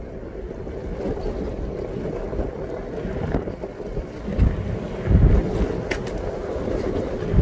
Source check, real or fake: real